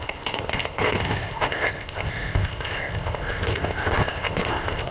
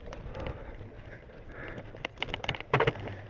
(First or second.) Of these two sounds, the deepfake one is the first